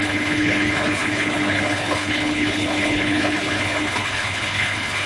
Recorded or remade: remade